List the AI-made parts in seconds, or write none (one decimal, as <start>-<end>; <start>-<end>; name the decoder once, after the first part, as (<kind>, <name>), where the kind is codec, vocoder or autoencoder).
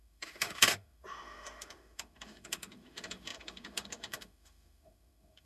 0.0-5.5 (autoencoder, DAC-VAE)